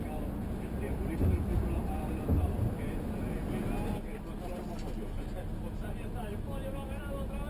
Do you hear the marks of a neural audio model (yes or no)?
no